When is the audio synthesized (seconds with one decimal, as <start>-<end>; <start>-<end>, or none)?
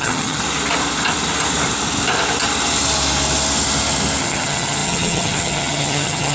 0.0-0.4; 4.2-6.3